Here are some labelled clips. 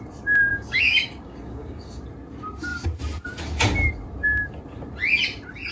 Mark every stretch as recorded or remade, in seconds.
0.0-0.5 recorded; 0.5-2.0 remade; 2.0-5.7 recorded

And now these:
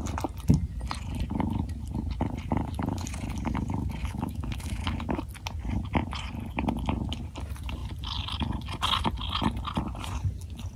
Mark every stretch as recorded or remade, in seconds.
0.0-4.0 recorded; 4.0-5.2 remade; 5.2-10.8 recorded

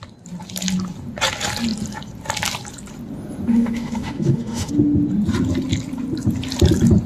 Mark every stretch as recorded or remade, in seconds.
0.0-3.5 recorded; 3.5-4.7 remade; 4.7-7.1 recorded